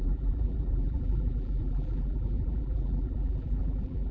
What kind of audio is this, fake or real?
fake